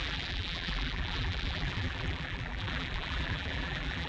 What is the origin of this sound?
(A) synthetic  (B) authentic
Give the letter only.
A